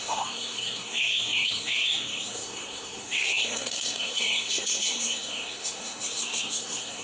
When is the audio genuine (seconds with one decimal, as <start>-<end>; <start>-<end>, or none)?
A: none

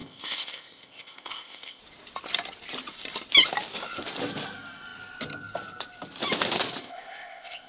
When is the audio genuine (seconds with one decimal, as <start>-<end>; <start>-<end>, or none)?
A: 1.8-6.8

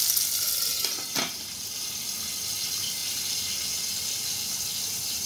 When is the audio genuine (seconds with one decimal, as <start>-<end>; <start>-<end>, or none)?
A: 0.0-5.3

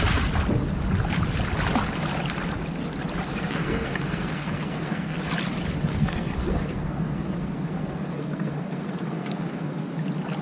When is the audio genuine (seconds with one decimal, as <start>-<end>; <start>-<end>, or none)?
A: 0.0-3.3; 5.2-5.9; 9.9-10.4

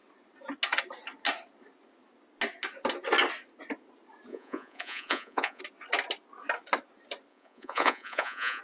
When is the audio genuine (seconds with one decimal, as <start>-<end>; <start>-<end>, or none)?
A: 0.0-4.3; 5.6-7.3

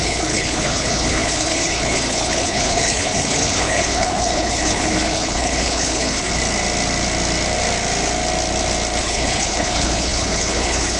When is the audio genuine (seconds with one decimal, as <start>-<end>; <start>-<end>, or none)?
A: 6.4-9.0